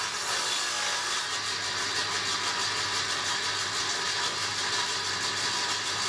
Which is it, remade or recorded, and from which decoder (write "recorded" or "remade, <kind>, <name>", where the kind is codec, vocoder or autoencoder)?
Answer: recorded